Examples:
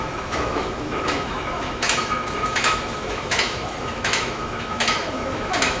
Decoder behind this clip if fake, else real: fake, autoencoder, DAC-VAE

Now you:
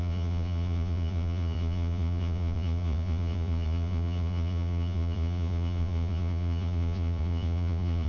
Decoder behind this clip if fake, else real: fake, vocoder, Vocos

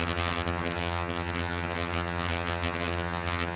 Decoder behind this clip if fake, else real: fake, vocoder, HiFi-GAN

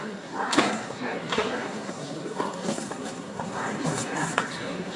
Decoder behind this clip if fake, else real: fake, codec, SNAC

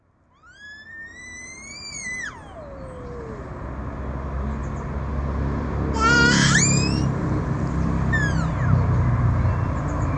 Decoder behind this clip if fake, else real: real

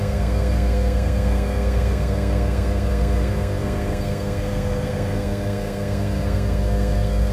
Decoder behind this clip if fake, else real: fake, codec, SNAC